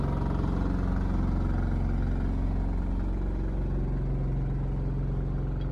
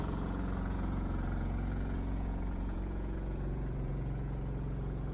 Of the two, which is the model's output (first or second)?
second